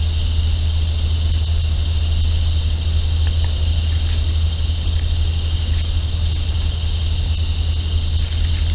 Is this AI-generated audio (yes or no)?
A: no